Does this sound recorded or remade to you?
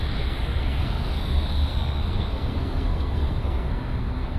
remade